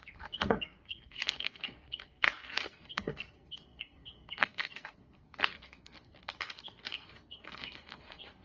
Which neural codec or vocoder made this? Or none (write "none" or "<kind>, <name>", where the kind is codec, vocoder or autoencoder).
codec, SNAC